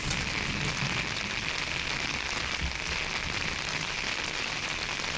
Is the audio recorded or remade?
recorded